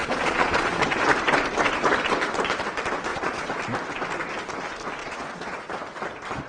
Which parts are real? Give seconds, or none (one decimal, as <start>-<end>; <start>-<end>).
0.8-3.1; 3.6-5.0; 5.7-6.5